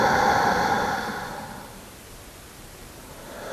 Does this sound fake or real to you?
real